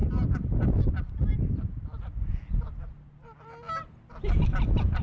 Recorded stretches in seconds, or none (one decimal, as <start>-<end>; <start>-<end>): 0.0-5.0